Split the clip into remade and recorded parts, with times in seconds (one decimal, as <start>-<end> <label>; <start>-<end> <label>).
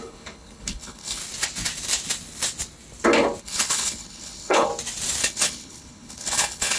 0.0-1.2 remade; 1.2-3.4 recorded; 3.4-4.7 remade; 4.7-5.2 recorded; 5.2-6.8 remade